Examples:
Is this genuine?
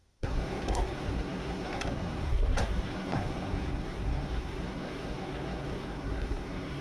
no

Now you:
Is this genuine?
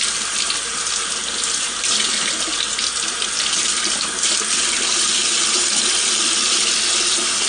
yes